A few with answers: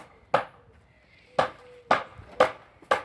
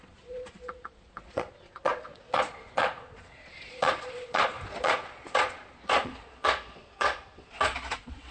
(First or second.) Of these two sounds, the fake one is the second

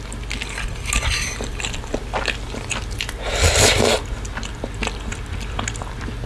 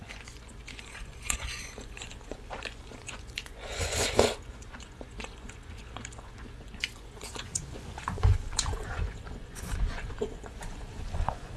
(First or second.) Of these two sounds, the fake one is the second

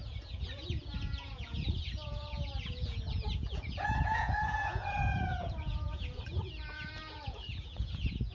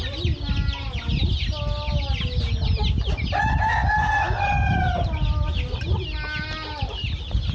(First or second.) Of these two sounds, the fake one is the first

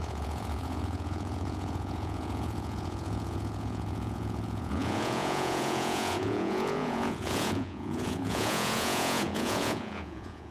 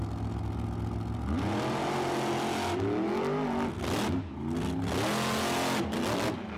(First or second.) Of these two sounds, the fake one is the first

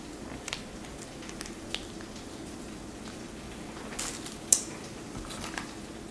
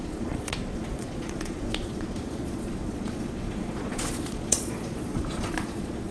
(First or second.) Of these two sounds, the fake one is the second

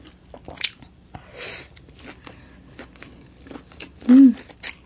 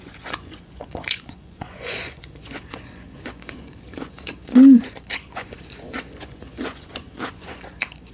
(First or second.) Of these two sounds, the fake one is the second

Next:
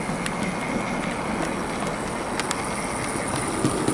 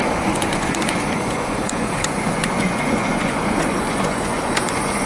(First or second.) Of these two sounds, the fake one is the second